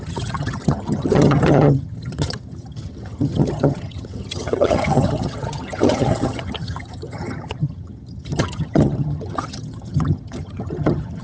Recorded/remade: remade